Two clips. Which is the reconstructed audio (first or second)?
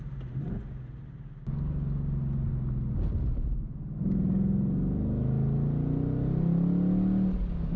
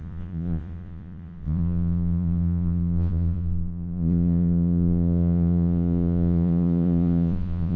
second